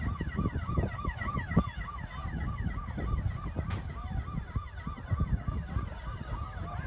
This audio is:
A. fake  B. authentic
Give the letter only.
B